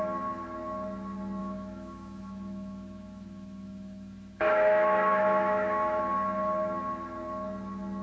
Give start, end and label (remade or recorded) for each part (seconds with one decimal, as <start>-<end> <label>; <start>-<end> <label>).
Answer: 0.0-1.4 recorded; 1.4-6.0 remade; 6.0-8.0 recorded